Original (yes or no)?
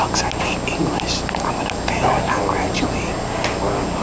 yes